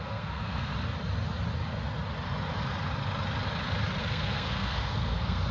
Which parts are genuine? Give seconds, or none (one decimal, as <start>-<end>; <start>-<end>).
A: 0.7-4.0